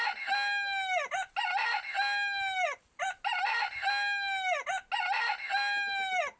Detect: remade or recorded recorded